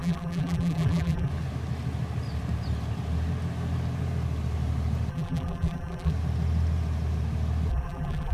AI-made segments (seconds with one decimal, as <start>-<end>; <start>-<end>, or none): 0.0-1.3; 5.1-6.1; 7.7-8.3